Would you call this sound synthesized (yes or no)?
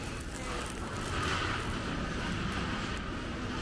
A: no